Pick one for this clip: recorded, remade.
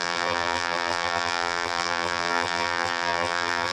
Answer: remade